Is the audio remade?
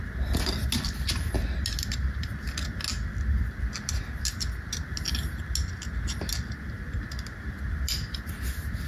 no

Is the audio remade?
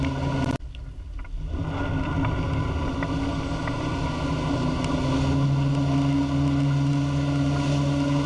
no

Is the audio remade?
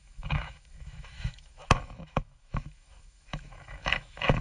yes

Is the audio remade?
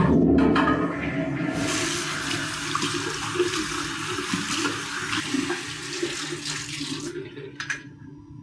no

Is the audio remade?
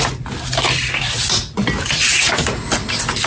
no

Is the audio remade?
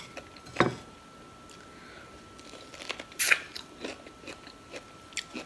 no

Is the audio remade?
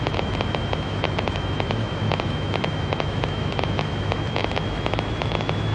yes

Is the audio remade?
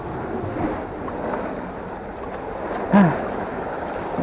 no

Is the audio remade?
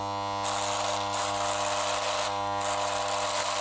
no